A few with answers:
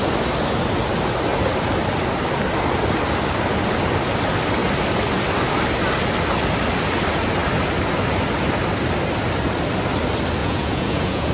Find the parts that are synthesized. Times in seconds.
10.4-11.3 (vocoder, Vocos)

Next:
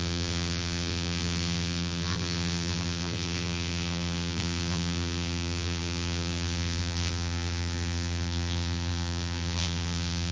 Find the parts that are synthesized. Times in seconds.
0.0-10.3 (vocoder, BigVGAN v2)

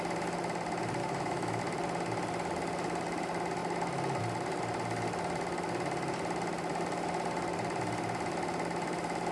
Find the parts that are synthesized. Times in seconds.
1.0-1.6 (autoencoder, DAC-VAE)

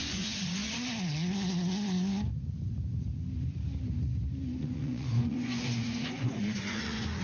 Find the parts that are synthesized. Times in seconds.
0.0-0.6 (vocoder, Vocos); 4.6-7.2

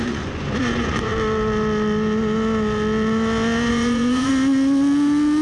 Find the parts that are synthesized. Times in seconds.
0.0-1.1 (vocoder, Vocos); 3.7-4.3

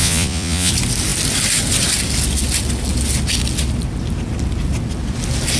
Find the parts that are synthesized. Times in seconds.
0.0-0.7 (vocoder, Vocos)

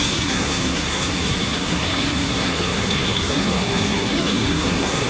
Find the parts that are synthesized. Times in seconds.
0.0-5.1 (codec, SNAC)

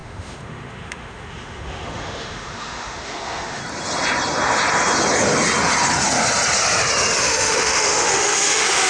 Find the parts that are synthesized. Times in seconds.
0.0-3.6 (autoencoder, DAC-VAE); 7.2-8.9